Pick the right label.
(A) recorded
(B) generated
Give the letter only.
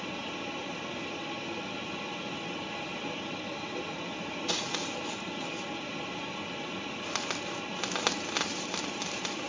A